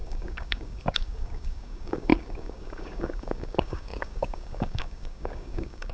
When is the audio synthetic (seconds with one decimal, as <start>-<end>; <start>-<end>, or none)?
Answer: 0.0-5.9